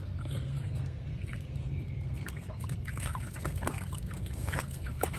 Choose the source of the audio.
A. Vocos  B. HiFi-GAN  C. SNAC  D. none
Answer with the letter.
C